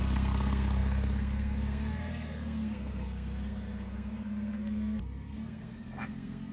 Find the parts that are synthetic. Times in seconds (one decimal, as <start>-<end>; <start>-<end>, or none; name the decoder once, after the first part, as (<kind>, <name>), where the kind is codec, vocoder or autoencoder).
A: 0.0-6.5 (codec, SNAC)